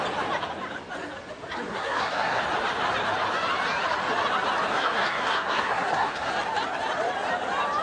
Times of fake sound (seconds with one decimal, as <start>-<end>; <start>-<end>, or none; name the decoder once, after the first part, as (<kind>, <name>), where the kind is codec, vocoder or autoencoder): 1.7-2.4 (codec, SNAC); 4.7-6.3

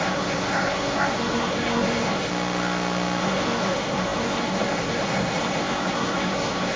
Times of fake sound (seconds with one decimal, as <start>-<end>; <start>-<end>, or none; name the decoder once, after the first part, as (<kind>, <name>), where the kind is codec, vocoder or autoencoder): 0.0-2.3 (codec, SNAC); 3.2-6.8

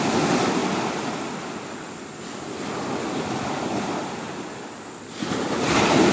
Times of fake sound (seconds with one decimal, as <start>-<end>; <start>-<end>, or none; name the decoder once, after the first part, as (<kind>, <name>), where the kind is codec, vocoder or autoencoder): none

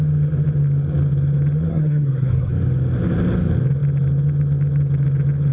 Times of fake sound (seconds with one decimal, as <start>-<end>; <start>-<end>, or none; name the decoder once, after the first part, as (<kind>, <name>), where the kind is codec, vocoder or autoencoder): 1.7-2.5 (codec, SNAC)

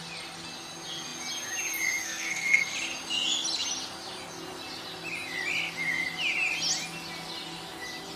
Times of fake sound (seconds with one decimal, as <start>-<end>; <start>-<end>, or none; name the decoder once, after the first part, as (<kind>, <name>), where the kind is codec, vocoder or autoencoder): 2.0-2.6 (codec, SNAC)

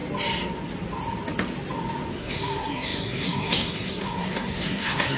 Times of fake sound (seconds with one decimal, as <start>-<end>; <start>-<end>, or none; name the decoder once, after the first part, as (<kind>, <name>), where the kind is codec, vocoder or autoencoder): 2.1-5.2 (codec, SNAC)

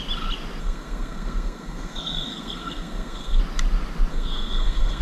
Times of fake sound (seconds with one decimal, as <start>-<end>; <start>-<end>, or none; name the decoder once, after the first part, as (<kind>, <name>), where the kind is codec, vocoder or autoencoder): 0.6-3.4 (codec, SNAC); 4.1-5.0